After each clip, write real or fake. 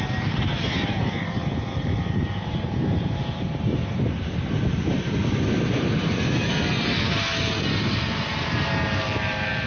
fake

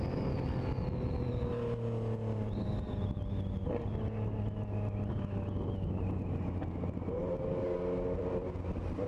real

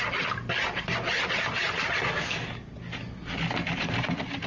real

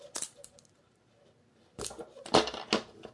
real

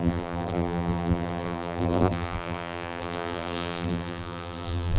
fake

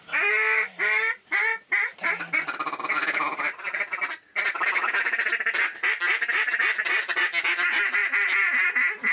real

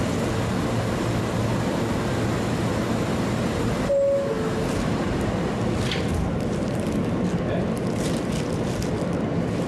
real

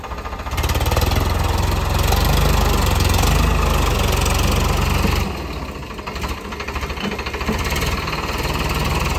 real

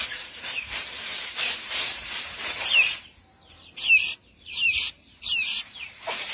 fake